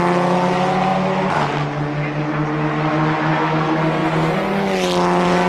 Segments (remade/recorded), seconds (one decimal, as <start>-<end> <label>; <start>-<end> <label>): 0.0-5.5 recorded